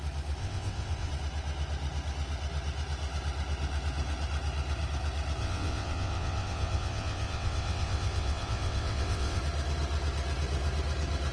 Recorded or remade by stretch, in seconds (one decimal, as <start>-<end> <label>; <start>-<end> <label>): 0.0-0.4 recorded; 0.4-1.1 remade; 1.1-5.4 recorded; 5.4-9.4 remade; 9.4-11.3 recorded